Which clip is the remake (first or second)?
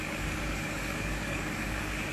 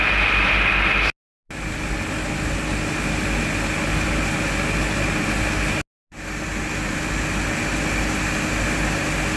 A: first